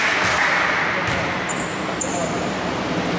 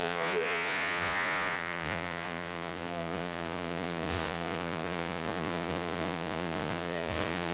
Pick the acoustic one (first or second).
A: first